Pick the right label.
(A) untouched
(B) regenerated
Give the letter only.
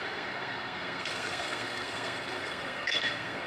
B